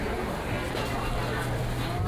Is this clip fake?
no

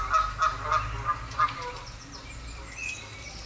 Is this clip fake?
no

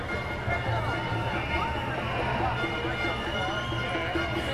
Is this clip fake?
no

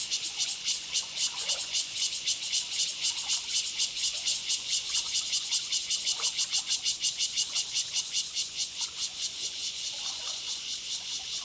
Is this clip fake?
yes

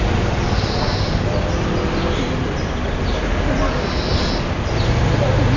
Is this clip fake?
no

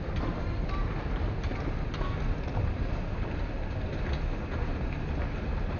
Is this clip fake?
no